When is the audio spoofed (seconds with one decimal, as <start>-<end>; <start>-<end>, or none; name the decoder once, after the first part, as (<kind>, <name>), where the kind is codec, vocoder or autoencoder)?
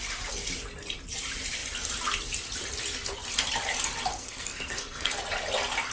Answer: 4.1-5.2 (codec, SNAC)